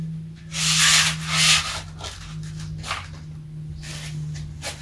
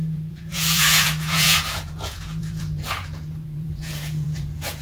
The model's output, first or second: second